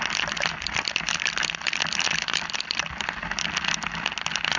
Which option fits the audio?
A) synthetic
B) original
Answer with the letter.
B